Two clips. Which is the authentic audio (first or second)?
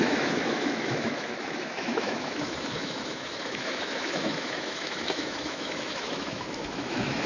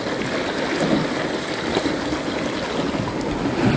second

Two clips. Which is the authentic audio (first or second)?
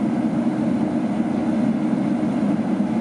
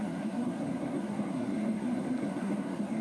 first